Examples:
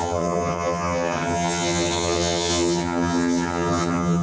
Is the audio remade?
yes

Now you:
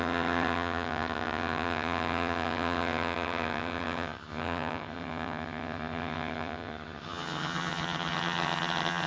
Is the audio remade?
yes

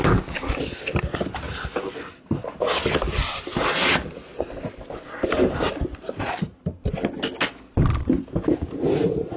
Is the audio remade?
no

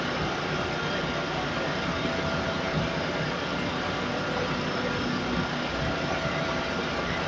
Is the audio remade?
no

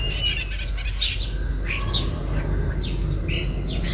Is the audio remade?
no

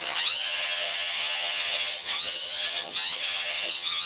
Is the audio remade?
yes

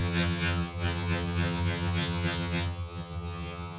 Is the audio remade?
yes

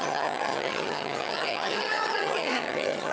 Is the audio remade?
yes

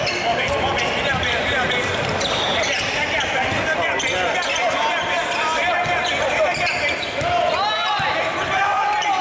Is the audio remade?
no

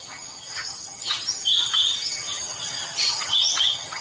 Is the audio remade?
yes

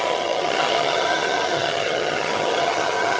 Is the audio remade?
yes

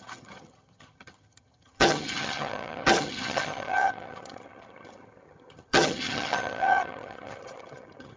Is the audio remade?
yes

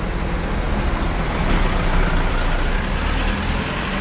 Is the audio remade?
no